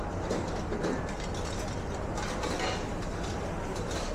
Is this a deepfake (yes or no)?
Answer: yes